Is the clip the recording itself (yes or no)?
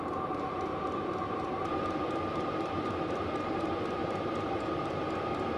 no